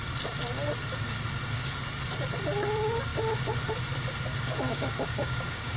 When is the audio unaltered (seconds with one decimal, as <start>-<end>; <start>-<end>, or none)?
0.0-4.3